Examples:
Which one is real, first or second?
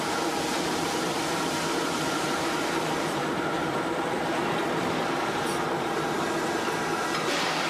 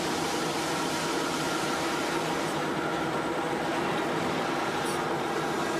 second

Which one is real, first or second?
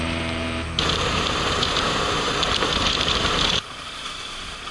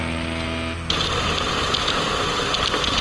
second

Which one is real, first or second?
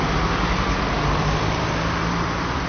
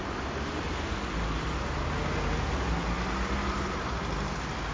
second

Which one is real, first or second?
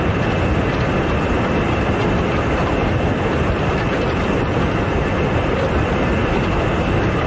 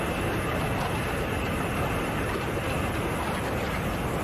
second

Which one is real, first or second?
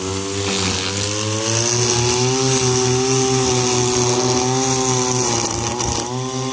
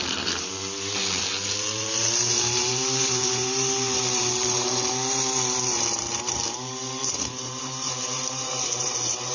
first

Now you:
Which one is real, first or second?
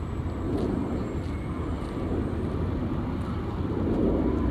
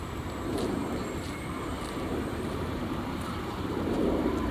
first